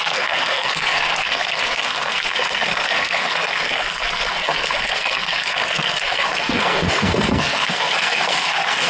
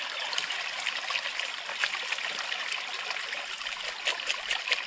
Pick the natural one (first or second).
second